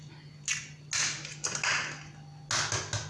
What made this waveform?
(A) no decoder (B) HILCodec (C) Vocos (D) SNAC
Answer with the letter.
A